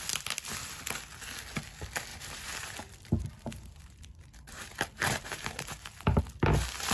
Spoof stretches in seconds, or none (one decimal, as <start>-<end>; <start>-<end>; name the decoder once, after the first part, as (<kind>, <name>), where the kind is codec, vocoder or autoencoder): 2.1-6.2 (vocoder, BigVGAN v2)